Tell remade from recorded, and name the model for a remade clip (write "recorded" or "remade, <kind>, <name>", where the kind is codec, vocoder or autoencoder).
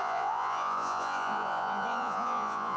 remade, vocoder, Vocos